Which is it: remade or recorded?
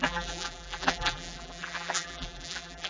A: remade